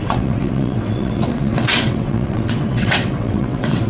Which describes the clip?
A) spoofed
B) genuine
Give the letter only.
A